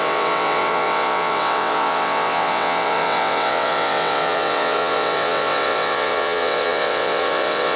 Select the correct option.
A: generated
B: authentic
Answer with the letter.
A